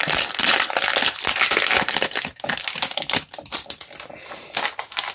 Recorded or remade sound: recorded